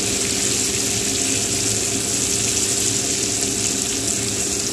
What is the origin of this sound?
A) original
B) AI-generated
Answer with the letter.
A